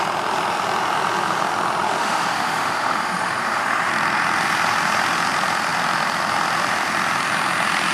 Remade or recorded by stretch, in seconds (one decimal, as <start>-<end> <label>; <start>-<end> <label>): 0.0-2.0 recorded; 2.0-3.9 remade; 3.9-7.9 recorded